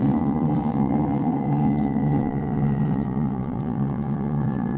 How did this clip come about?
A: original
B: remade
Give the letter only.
B